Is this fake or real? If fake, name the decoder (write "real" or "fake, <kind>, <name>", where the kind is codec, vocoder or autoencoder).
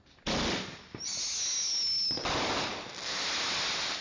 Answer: real